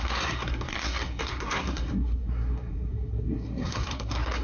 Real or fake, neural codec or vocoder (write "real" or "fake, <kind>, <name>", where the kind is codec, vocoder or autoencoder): fake, codec, SNAC